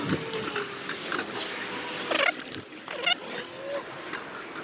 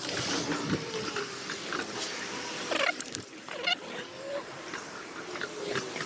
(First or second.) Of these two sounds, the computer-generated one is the second